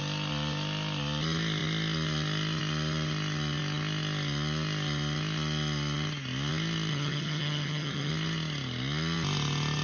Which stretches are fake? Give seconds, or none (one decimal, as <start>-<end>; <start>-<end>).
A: 6.9-8.1